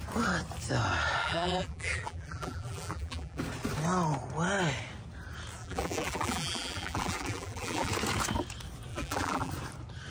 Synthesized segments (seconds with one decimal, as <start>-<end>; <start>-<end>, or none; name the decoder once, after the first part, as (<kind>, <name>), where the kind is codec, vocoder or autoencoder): 1.2-3.4 (vocoder, BigVGAN v2); 5.6-7.9; 8.9-9.5